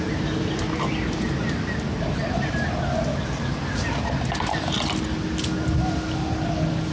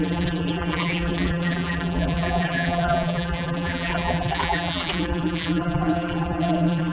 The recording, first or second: first